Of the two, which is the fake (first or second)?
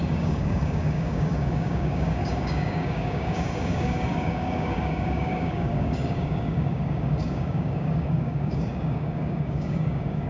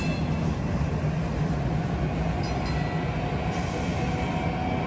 first